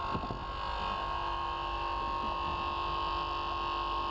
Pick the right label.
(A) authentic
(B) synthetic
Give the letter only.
A